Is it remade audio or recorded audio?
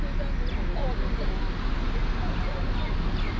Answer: recorded